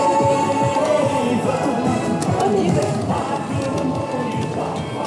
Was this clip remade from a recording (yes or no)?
no